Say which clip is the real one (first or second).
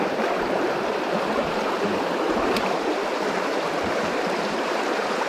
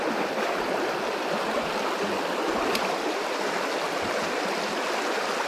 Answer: second